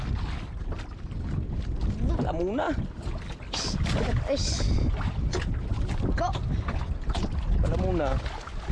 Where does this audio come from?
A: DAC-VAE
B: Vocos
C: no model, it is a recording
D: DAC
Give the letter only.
C